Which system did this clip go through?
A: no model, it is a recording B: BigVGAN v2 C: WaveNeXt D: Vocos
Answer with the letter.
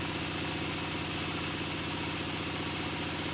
A